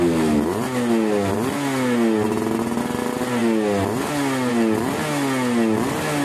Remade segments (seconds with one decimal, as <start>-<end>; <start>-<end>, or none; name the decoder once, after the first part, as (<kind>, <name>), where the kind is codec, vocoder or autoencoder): none